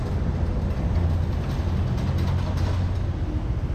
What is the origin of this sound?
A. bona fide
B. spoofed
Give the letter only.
A